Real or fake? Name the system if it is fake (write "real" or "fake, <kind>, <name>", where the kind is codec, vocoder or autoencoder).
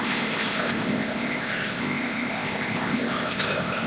fake, codec, ZipCodec